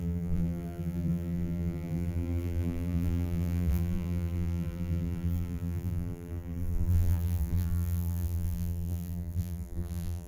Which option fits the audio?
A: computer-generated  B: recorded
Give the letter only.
A